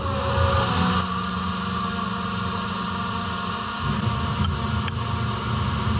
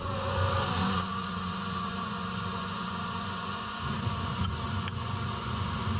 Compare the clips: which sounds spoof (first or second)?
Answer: second